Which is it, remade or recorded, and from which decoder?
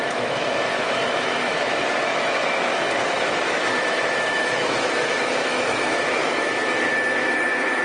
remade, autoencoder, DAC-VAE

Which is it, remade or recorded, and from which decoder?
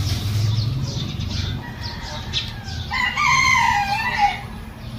recorded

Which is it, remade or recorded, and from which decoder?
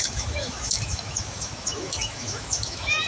remade, autoencoder, DAC-VAE